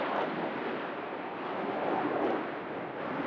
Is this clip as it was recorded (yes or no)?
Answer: no